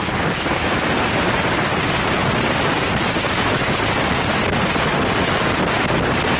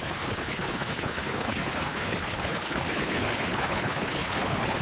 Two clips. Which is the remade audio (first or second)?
second